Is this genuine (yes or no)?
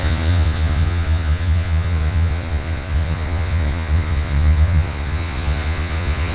no